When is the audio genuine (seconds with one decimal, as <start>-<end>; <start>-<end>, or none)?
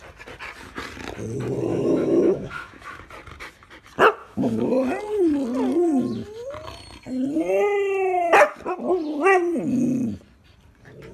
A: 0.0-1.7; 3.0-4.2; 4.7-11.1